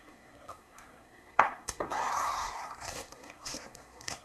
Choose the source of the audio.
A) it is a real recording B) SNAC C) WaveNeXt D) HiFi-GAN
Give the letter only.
B